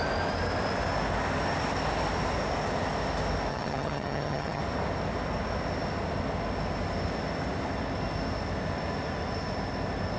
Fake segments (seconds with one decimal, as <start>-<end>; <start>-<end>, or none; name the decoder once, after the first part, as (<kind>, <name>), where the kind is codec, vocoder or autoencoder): 3.5-4.6 (vocoder, HiFi-GAN)